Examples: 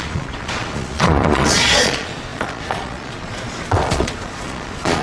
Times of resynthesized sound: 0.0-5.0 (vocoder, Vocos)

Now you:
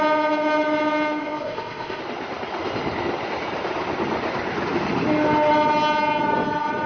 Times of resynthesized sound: 1.2-2.0 (codec, ZipCodec)